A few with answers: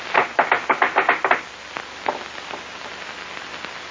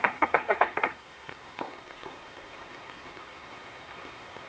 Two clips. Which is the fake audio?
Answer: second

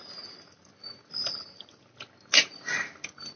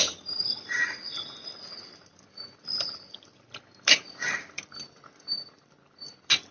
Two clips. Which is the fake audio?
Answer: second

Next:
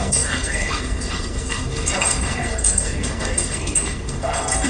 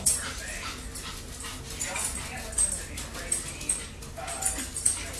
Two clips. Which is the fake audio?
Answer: first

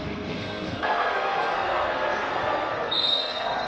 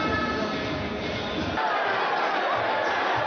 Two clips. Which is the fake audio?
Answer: first